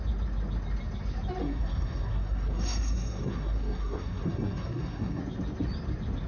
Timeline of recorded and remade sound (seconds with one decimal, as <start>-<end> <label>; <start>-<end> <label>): 0.0-1.4 recorded; 1.4-5.2 remade; 5.2-6.3 recorded